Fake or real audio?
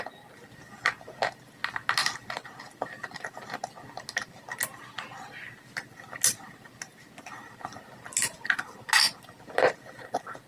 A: real